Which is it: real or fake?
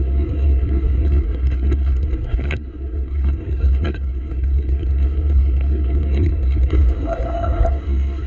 fake